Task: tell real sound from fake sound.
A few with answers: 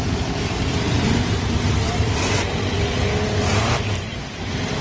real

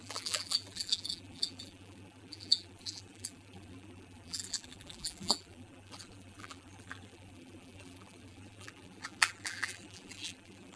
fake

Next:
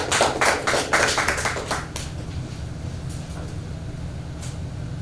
real